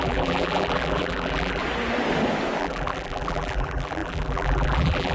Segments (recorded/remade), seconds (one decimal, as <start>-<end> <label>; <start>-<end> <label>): 0.0-1.6 remade; 1.6-2.6 recorded; 2.6-5.1 remade